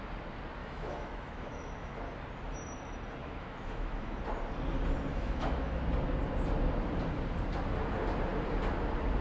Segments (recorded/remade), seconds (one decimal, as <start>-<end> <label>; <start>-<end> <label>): 0.0-0.6 recorded; 0.6-1.9 remade; 1.9-3.2 recorded; 3.2-4.2 remade; 4.2-5.1 recorded; 5.1-5.8 remade; 5.8-9.2 recorded